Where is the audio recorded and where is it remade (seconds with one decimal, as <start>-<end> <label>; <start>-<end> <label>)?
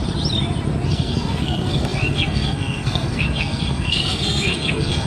0.0-0.9 recorded; 0.9-5.1 remade